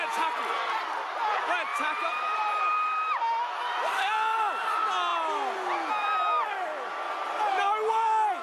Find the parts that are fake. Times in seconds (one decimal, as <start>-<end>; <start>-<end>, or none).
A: 1.7-2.7

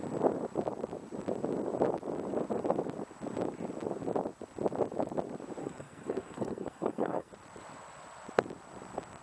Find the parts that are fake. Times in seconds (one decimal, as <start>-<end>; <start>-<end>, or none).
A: 5.6-7.3

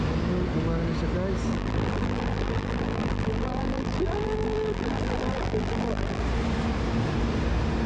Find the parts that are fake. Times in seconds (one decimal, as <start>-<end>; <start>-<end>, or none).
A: 1.5-6.2

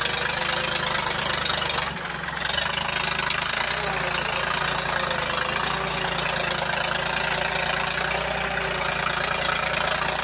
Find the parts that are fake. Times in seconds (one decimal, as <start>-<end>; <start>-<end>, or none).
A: none

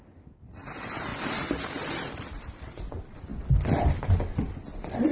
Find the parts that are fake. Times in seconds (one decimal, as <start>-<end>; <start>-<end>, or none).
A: none

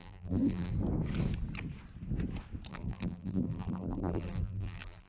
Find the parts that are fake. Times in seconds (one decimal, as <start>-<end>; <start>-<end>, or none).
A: 0.0-0.7; 2.7-5.1